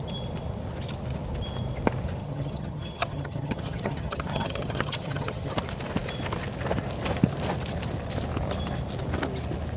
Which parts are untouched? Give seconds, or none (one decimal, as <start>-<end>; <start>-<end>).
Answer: 0.0-2.2; 5.6-9.8